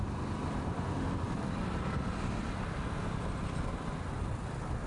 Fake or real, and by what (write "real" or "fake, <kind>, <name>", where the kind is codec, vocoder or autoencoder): real